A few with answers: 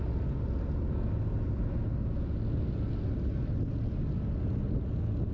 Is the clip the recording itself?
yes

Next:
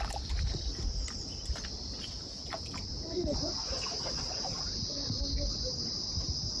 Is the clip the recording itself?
yes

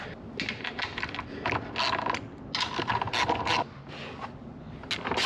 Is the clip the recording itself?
yes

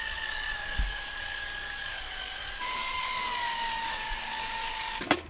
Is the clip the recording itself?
no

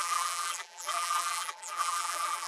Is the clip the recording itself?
no